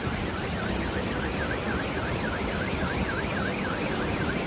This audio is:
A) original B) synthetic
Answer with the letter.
A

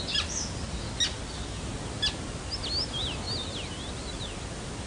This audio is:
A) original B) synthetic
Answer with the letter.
A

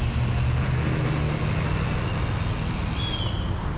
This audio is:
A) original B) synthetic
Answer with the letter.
A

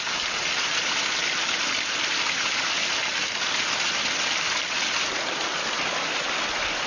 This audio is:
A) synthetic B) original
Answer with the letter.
B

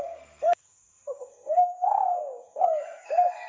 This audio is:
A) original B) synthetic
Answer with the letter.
B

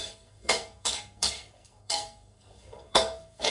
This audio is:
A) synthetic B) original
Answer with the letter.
A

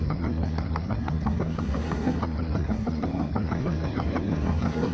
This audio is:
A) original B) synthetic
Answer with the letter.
B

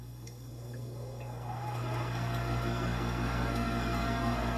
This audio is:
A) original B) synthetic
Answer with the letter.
B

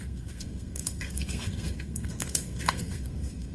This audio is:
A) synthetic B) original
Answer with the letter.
A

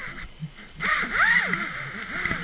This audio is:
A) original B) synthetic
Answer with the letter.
A